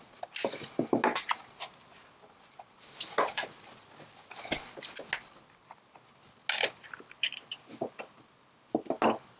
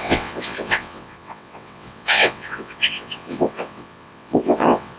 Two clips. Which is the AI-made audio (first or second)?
second